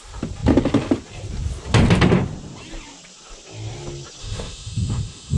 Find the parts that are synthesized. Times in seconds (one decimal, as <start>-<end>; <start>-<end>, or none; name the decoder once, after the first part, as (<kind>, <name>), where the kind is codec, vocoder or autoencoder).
4.2-5.4 (autoencoder, DAC-VAE)